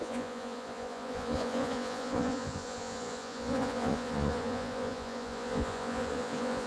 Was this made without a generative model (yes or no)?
no